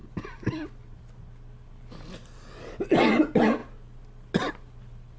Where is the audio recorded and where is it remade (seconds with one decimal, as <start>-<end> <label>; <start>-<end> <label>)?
0.0-5.2 recorded